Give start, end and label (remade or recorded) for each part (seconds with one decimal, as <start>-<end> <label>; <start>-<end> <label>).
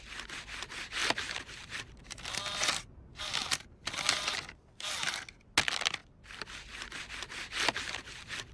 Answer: 0.0-8.5 recorded